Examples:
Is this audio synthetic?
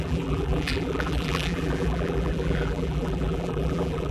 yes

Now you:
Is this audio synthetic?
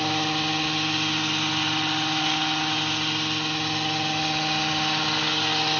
no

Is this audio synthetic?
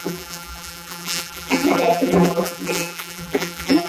yes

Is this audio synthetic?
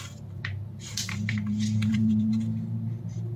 yes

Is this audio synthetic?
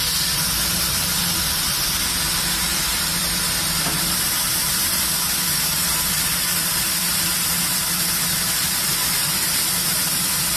yes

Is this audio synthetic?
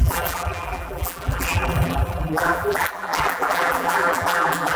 yes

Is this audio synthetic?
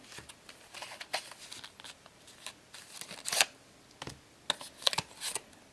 no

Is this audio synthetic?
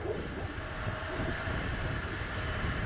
yes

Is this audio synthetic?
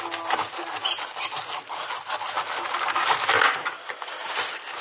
no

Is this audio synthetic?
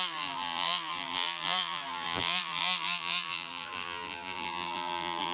yes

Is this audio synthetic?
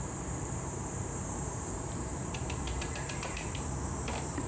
yes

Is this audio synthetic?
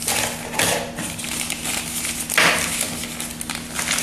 no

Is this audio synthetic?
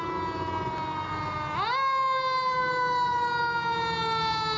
no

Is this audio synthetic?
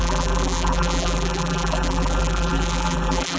yes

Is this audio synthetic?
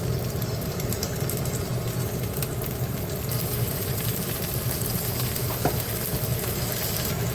no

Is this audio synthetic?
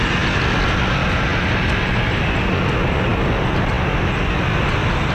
no